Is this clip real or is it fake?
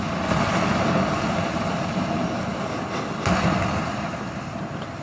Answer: real